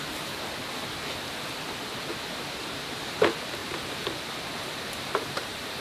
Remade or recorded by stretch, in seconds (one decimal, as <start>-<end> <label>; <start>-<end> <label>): 0.0-3.6 recorded; 3.6-5.8 remade